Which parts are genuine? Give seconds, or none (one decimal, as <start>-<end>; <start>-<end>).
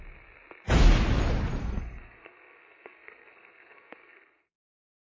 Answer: 0.0-1.6; 4.7-5.2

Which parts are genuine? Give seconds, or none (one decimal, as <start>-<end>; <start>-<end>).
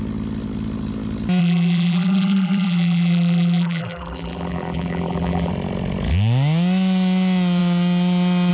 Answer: 0.0-1.4; 5.5-8.5